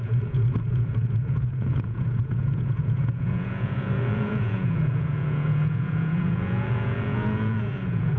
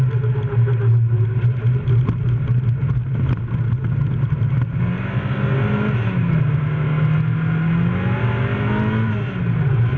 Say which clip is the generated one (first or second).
first